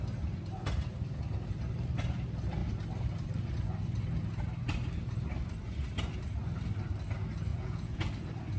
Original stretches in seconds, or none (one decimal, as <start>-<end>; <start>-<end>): 0.0-7.5; 8.1-8.6